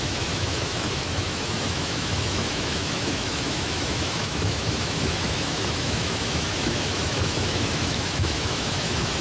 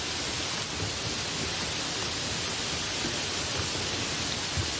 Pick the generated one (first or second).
first